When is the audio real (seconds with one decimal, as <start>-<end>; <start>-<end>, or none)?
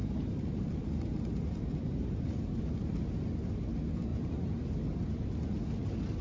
2.8-4.1; 4.6-6.2